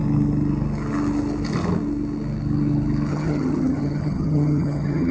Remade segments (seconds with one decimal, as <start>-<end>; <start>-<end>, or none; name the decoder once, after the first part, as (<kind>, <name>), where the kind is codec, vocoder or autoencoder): 3.1-5.1 (vocoder, HiFi-GAN)